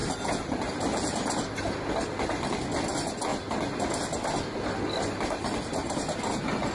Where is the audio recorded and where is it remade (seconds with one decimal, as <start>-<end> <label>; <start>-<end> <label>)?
0.0-1.6 remade; 1.6-6.7 recorded